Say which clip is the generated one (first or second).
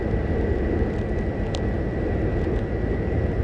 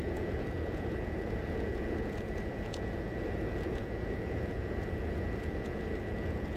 second